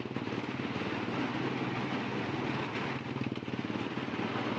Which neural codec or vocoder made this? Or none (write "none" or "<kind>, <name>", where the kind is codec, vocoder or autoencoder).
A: none